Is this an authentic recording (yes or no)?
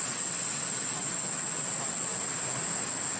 yes